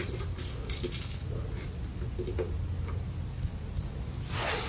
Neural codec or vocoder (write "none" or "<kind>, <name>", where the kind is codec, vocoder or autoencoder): none